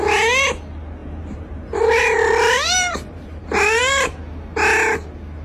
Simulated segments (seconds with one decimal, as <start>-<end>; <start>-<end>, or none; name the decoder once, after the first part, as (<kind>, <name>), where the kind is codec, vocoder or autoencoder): 1.0-4.2 (vocoder, BigVGAN v2)